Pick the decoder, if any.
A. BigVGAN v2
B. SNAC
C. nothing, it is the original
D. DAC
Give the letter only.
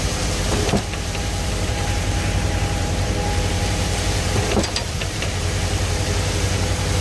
A